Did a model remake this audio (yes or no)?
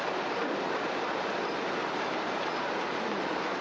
yes